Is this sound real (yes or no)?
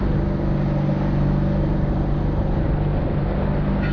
yes